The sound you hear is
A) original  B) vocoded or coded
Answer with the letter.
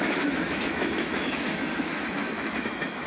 B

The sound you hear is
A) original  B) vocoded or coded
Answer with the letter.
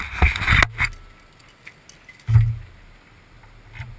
A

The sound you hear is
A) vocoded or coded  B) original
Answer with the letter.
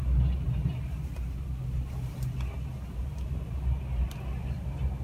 B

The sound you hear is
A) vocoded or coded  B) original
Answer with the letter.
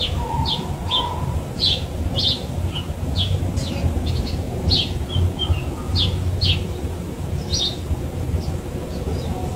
B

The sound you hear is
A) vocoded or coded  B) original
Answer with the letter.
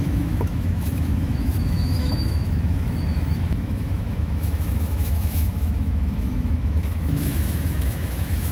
A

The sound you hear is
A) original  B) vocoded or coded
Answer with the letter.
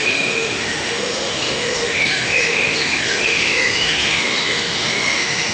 B